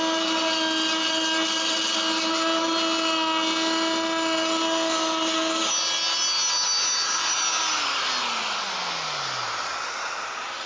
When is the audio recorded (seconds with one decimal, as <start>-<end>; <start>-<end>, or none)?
0.0-10.7